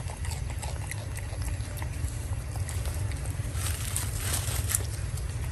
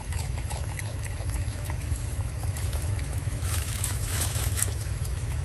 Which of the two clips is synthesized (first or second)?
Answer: second